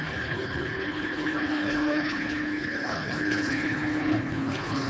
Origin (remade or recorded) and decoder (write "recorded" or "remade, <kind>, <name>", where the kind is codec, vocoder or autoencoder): remade, codec, HILCodec